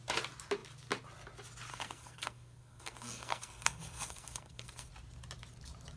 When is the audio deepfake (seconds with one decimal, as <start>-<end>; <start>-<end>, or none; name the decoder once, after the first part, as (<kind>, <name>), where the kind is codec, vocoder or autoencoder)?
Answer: 1.7-4.9 (codec, SNAC)